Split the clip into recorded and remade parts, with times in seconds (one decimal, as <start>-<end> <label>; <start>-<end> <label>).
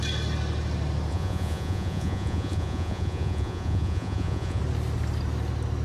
0.0-1.1 recorded; 1.1-4.6 remade; 4.6-5.8 recorded